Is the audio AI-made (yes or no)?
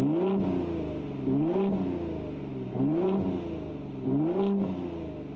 no